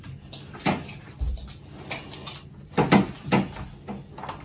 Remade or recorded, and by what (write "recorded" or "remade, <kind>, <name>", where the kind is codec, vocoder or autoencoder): recorded